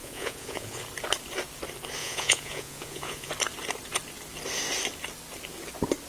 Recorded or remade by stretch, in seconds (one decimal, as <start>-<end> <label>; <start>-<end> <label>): 0.0-0.8 remade; 0.8-2.0 recorded; 2.0-3.3 remade; 3.3-6.1 recorded